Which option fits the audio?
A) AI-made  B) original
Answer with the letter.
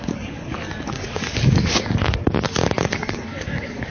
A